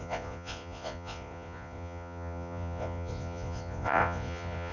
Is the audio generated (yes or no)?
yes